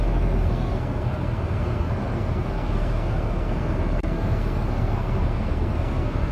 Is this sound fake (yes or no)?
yes